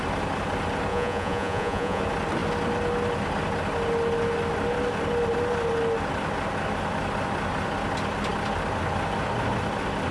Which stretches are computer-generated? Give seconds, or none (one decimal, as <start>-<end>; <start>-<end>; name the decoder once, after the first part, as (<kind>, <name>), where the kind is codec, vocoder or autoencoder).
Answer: 0.9-2.0 (vocoder, Vocos)